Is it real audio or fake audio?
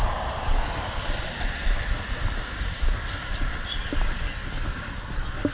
real